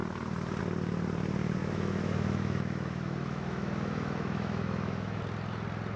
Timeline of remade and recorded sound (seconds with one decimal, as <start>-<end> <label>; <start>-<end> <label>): 0.0-1.6 recorded; 1.6-5.2 remade; 5.2-6.0 recorded